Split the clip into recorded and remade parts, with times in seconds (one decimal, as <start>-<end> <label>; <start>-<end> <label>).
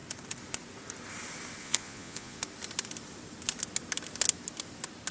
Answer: 0.0-1.6 recorded; 1.6-2.4 remade; 2.4-5.1 recorded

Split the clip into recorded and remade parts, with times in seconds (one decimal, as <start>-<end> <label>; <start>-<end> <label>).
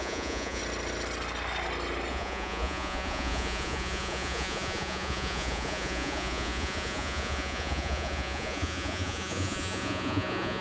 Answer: 0.0-0.6 remade; 0.6-2.1 recorded; 2.1-10.6 remade